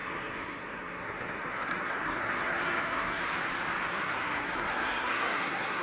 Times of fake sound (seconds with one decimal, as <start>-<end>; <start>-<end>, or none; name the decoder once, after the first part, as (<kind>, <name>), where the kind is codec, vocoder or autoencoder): 0.0-3.2 (codec, SNAC); 3.9-5.8